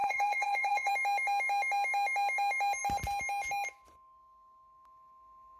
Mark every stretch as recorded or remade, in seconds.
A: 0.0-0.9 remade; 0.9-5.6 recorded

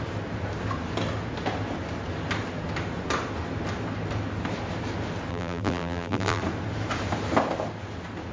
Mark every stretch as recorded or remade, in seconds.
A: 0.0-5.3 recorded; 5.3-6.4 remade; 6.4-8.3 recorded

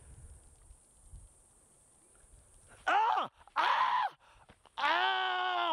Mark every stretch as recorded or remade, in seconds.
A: 0.0-1.1 recorded; 1.1-4.5 remade; 4.5-5.7 recorded

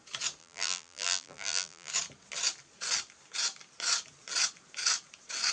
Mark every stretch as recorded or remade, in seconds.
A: 0.0-0.4 recorded; 0.4-1.9 remade; 1.9-5.5 recorded

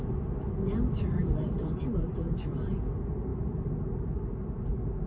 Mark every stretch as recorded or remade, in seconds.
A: 0.0-1.2 recorded; 1.2-2.7 remade; 2.7-5.1 recorded

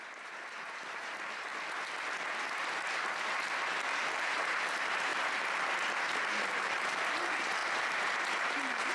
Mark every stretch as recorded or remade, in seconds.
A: 0.0-1.5 remade; 1.5-2.9 recorded; 2.9-8.9 remade

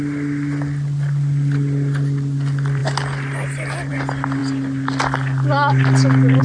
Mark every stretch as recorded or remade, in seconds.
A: 0.0-6.4 recorded

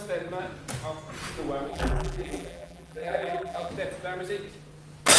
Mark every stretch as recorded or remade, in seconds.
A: 0.0-1.7 recorded; 1.7-3.7 remade; 3.7-5.2 recorded